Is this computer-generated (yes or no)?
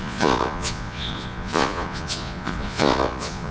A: yes